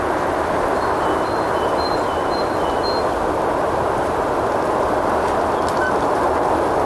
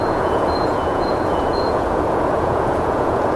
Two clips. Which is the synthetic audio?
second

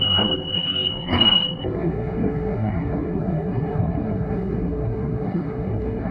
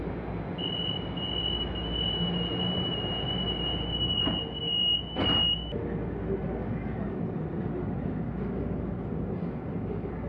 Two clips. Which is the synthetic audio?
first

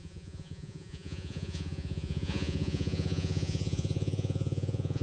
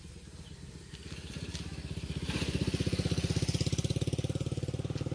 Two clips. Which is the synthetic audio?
first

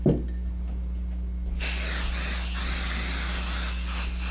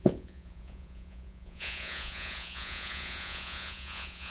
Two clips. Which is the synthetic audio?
second